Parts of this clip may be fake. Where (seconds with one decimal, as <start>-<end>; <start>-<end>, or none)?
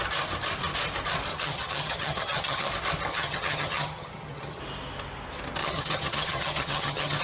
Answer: 1.3-2.7; 3.1-4.6; 5.6-7.2